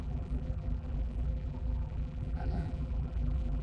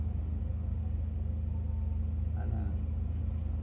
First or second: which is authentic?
second